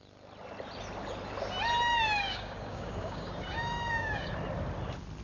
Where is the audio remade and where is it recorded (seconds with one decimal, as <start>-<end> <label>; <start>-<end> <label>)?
0.0-1.9 recorded; 1.9-4.3 remade; 4.3-5.2 recorded